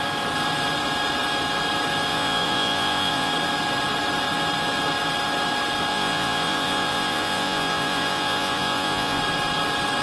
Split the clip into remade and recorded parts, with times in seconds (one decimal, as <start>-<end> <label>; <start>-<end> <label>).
0.0-2.1 recorded; 2.1-3.3 remade; 3.3-5.9 recorded; 5.9-9.2 remade; 9.2-10.0 recorded